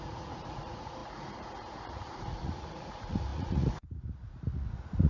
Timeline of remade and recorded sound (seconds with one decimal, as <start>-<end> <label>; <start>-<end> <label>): 0.0-5.1 remade